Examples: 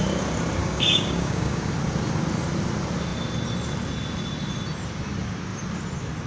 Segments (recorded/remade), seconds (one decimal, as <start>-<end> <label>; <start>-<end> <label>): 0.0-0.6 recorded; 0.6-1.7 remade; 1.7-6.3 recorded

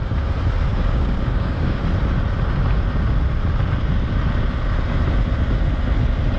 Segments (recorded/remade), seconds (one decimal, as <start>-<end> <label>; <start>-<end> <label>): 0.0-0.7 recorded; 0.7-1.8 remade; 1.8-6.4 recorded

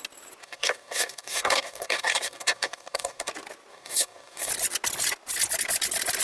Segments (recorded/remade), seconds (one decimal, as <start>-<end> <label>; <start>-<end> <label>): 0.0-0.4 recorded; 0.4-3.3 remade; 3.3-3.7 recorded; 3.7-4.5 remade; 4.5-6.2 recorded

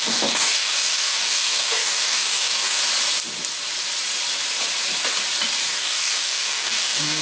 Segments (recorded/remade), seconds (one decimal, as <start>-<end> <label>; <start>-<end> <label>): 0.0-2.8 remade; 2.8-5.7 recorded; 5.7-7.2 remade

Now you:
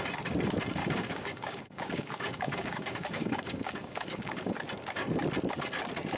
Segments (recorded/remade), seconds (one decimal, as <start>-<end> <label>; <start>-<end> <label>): 0.0-0.8 recorded; 0.8-4.5 remade; 4.5-6.2 recorded